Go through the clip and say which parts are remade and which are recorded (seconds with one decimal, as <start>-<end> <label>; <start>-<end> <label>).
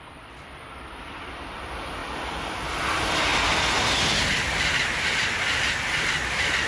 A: 0.0-3.3 remade; 3.3-5.1 recorded; 5.1-6.7 remade